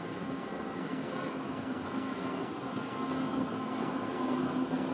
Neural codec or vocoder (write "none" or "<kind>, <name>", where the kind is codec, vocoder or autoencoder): codec, SNAC